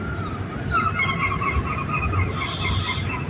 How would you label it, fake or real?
real